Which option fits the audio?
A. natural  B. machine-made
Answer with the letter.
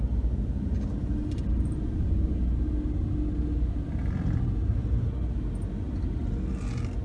A